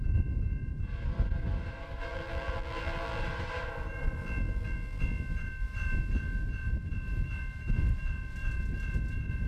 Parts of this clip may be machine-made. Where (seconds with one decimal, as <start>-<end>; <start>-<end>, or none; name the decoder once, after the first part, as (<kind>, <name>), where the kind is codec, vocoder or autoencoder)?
2.1-3.2 (vocoder, BigVGAN v2); 4.2-5.0